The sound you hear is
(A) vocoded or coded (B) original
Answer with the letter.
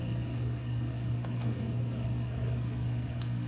A